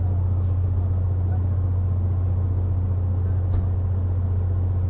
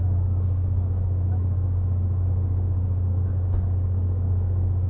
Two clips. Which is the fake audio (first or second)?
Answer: second